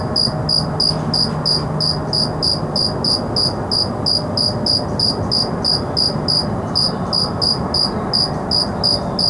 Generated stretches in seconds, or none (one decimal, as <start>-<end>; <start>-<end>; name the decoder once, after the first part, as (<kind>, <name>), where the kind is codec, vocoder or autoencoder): none